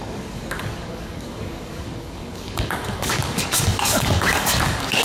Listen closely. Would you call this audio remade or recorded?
remade